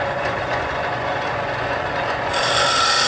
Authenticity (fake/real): fake